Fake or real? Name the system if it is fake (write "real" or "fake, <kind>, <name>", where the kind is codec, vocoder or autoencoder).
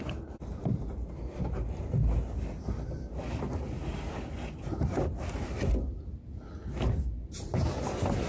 real